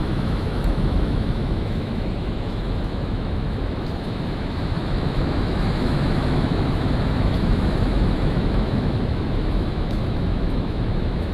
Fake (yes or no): yes